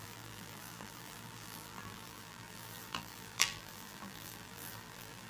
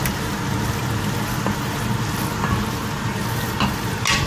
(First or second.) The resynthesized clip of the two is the first